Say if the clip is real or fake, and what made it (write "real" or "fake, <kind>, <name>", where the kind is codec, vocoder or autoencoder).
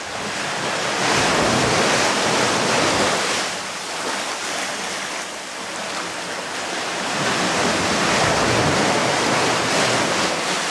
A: real